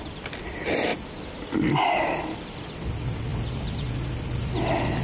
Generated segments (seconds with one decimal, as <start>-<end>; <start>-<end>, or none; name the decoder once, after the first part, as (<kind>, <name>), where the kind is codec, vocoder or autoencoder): 0.0-0.9 (vocoder, BigVGAN v2); 2.2-5.0